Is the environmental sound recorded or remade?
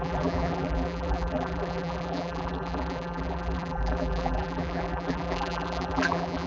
remade